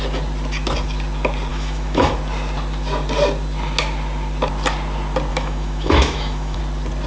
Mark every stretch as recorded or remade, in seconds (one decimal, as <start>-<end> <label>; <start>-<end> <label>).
0.0-1.5 recorded; 1.5-2.1 remade; 2.1-5.3 recorded; 5.3-6.6 remade; 6.6-7.1 recorded